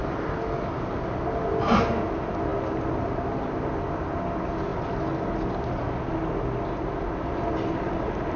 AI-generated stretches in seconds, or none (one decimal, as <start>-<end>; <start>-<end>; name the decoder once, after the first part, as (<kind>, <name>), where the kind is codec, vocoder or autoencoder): none

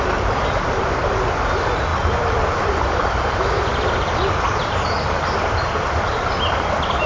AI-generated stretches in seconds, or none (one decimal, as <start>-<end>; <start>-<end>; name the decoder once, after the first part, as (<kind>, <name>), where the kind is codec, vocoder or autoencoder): none

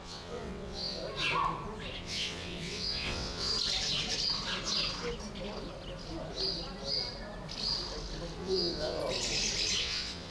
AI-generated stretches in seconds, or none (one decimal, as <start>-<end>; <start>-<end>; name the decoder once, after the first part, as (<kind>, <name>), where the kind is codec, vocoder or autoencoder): 0.0-1.0 (vocoder, WaveNeXt); 2.0-3.5; 8.4-9.0; 9.8-10.3

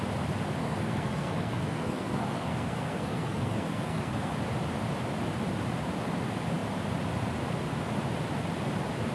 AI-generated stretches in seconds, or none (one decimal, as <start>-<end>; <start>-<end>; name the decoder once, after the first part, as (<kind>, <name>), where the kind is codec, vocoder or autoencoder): 0.6-4.3 (codec, SNAC)

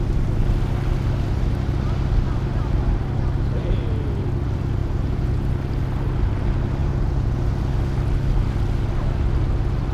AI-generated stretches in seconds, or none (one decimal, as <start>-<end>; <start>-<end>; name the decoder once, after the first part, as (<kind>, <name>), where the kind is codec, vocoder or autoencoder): 4.8-5.5 (vocoder, Vocos); 6.8-7.4

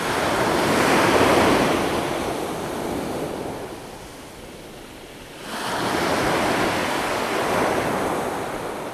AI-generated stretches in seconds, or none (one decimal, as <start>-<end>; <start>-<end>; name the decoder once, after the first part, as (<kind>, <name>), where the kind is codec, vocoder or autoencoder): 6.8-7.3 (codec, DAC)

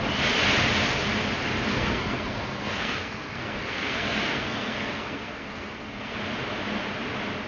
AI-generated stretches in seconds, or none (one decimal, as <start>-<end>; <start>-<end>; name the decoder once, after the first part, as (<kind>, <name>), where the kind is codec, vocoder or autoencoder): 1.7-6.2 (codec, SNAC)

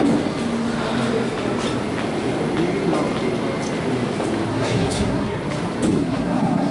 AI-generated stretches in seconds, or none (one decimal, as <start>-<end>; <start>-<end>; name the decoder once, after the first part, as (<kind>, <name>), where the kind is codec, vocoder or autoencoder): 4.5-5.4 (codec, SNAC); 5.9-6.7